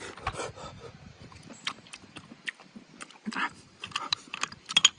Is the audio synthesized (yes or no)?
yes